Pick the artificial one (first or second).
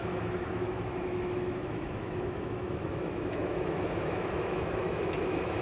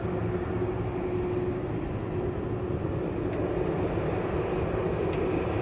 first